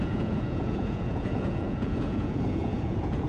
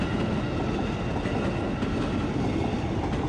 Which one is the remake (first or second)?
first